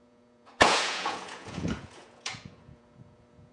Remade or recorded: remade